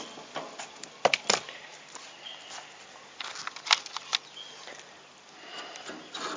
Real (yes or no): yes